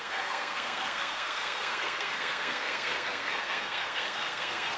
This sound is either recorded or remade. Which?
remade